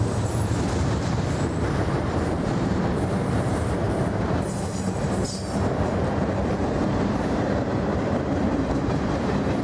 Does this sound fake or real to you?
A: fake